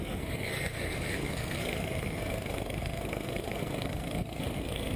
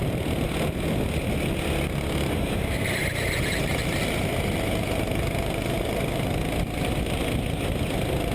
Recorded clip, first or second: second